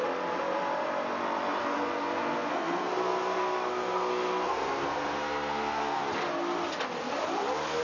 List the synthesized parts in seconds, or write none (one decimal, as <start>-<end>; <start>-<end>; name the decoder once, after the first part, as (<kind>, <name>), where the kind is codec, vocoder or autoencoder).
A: 1.6-6.0 (codec, SNAC)